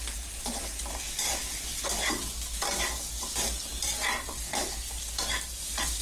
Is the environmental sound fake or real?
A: real